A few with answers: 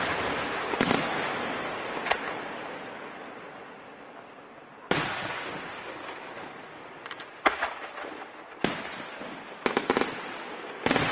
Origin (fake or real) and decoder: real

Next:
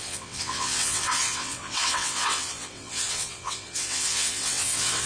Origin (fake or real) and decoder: fake, vocoder, WaveNeXt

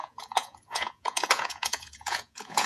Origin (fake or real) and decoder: fake, vocoder, Vocos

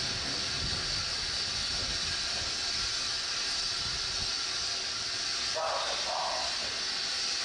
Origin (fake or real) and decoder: real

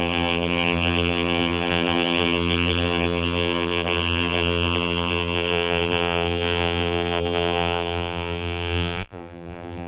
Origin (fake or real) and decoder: fake, vocoder, BigVGAN v2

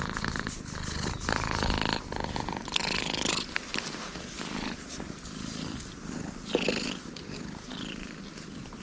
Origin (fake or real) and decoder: real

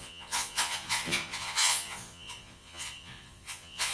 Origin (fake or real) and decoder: fake, vocoder, Vocos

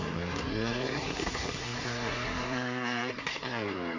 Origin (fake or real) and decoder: fake, codec, SNAC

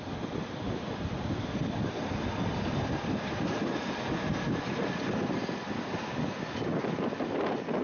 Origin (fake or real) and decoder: real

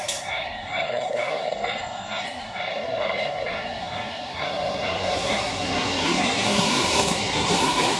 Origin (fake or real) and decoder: fake, codec, SNAC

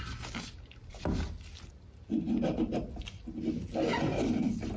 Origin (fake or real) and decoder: real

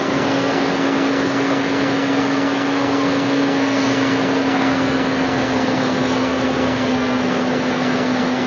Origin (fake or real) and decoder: fake, codec, SNAC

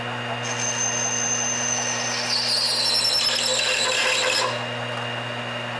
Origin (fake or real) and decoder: real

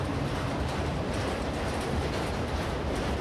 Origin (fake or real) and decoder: fake, vocoder, BigVGAN v2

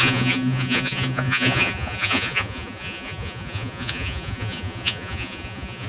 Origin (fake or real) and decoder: fake, vocoder, Vocos